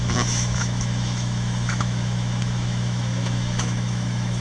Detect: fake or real fake